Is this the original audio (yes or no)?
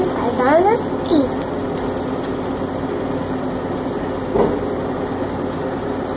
yes